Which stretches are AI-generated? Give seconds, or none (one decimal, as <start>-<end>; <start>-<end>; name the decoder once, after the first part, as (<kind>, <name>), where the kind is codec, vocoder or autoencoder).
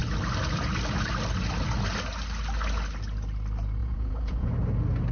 3.8-4.5 (vocoder, Vocos)